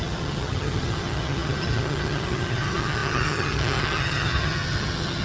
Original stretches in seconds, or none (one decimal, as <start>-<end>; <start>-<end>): none